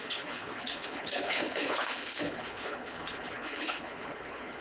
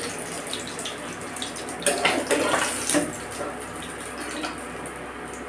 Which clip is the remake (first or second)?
first